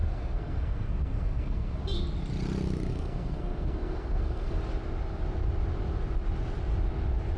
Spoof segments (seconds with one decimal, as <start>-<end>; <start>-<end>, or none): 0.0-1.8; 2.9-4.6